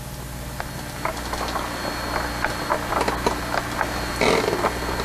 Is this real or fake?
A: real